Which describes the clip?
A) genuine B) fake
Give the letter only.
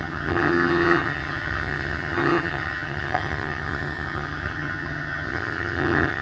B